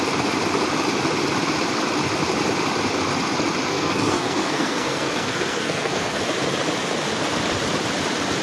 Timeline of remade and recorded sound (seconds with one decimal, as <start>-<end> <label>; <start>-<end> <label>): 0.0-3.7 recorded; 3.7-6.2 remade; 6.2-8.4 recorded